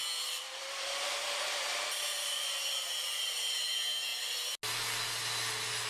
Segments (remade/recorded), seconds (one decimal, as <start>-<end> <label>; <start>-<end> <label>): 0.0-4.1 remade; 4.1-5.9 recorded